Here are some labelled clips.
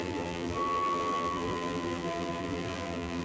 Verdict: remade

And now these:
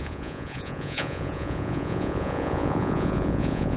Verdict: remade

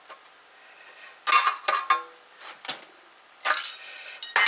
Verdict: recorded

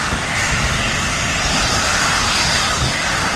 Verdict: recorded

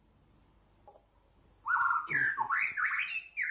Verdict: recorded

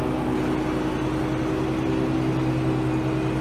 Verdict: recorded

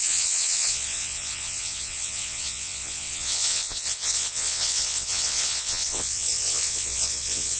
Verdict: remade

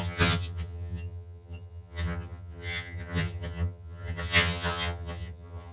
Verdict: remade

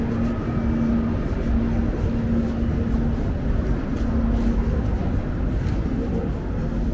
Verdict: recorded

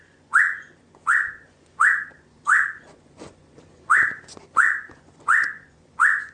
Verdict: remade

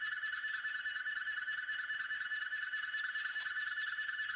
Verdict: remade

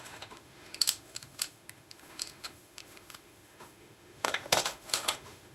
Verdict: remade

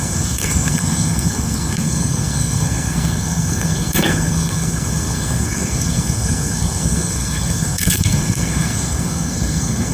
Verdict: remade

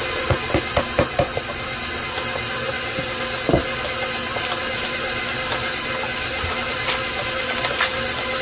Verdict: recorded